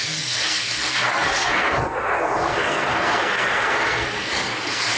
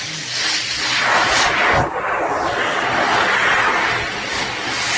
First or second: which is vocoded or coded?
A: first